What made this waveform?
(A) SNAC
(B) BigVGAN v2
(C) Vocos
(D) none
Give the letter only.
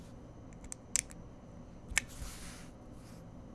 D